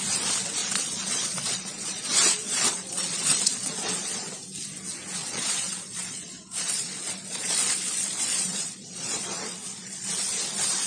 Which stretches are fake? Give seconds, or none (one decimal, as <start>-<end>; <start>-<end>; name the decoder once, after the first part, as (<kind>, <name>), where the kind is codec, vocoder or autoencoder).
0.6-4.3 (vocoder, Vocos); 5.2-10.1